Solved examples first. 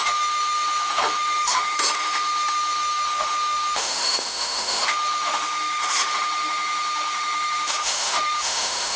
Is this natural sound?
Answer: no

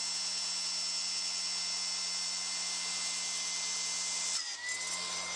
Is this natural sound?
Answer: yes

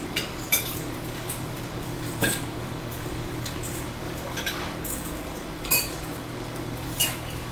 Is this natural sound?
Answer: no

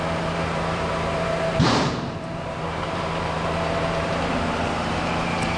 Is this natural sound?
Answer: no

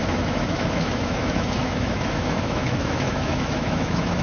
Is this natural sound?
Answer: no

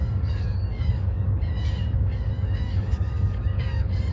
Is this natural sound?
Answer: no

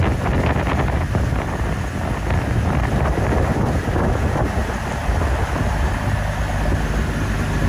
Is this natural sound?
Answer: yes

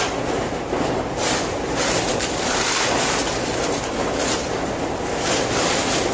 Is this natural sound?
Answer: yes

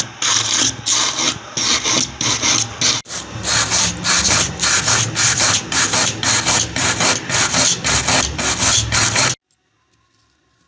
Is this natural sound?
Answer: yes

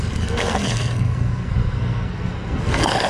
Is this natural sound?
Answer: no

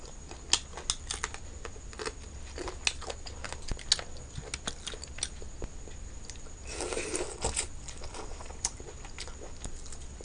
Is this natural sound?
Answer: yes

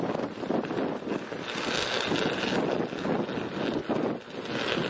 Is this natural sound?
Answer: yes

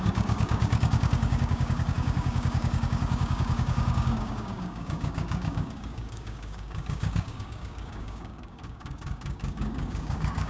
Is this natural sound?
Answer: no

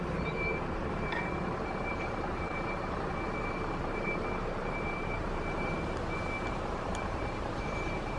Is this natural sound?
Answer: no